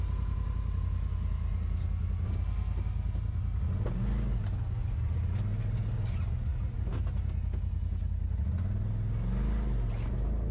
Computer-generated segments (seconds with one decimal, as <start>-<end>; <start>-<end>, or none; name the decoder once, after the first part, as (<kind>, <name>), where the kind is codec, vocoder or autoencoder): none